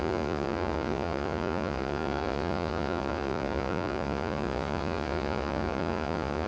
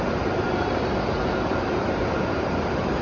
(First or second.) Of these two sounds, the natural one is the second